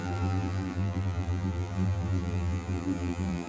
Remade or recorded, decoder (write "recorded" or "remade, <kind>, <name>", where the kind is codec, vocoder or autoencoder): remade, vocoder, BigVGAN v2